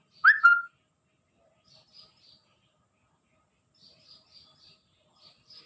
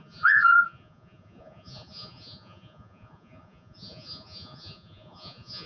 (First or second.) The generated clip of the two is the second